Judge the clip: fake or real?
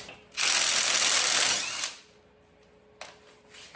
real